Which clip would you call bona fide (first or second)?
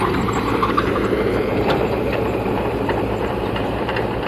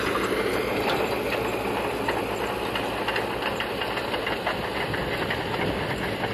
second